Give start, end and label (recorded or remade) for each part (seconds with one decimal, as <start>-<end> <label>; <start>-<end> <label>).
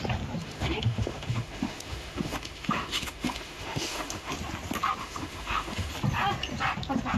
0.0-0.4 recorded; 0.4-4.3 remade; 4.3-5.0 recorded; 5.0-5.9 remade; 5.9-7.2 recorded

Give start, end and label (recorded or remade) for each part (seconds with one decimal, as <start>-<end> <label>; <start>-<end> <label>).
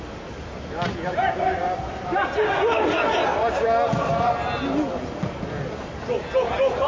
0.0-1.2 recorded; 1.2-1.9 remade; 1.9-6.9 recorded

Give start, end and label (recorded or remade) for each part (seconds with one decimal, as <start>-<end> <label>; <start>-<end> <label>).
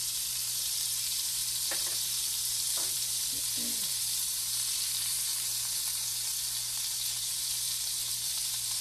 0.0-5.3 remade; 5.3-7.3 recorded; 7.3-8.8 remade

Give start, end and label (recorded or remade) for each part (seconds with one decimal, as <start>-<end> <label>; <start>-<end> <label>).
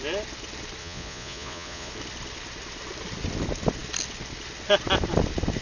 0.0-0.8 recorded; 0.8-1.9 remade; 1.9-5.6 recorded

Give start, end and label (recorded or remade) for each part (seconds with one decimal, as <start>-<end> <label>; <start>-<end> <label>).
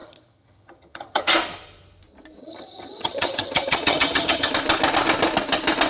0.0-1.2 remade; 1.2-2.4 recorded; 2.4-4.5 remade; 4.5-5.9 recorded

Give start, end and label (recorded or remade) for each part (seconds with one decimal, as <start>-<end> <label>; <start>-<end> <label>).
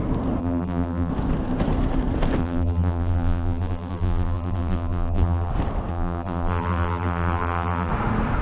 0.0-0.4 recorded; 0.4-1.1 remade; 1.1-2.4 recorded; 2.4-5.5 remade; 5.5-5.9 recorded; 5.9-7.9 remade; 7.9-8.4 recorded